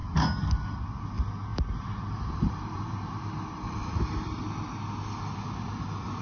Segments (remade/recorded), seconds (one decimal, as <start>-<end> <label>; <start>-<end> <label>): 0.0-1.5 recorded; 1.5-4.0 remade; 4.0-6.2 recorded